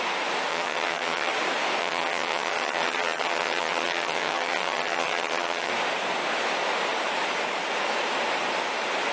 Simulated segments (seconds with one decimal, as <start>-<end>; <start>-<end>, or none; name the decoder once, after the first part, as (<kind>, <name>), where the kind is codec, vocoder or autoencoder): 0.5-1.3 (vocoder, HiFi-GAN); 1.8-5.7